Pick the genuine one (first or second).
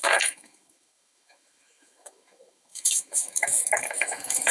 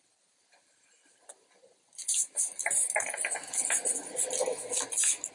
second